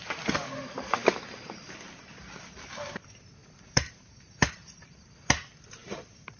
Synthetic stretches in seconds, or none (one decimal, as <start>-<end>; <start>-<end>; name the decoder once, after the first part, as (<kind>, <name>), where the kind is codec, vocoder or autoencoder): 3.4-4.5 (vocoder, BigVGAN v2); 5.8-6.4